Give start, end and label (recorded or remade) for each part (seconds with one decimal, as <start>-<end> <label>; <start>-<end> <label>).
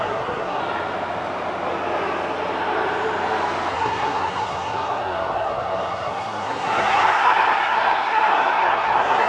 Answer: 0.0-0.6 remade; 0.6-3.7 recorded; 3.7-9.3 remade